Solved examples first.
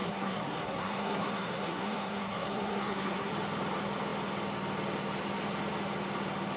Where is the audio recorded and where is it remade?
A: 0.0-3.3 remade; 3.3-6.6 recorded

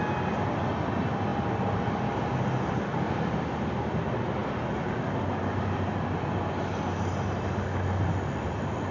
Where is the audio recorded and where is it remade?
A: 0.0-8.9 recorded